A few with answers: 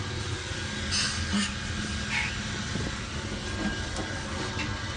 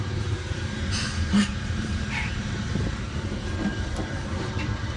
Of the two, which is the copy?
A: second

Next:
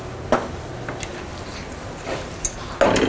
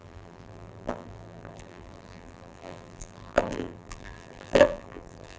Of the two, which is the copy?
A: second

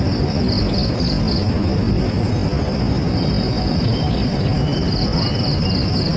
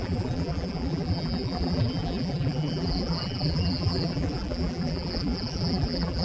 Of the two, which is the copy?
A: second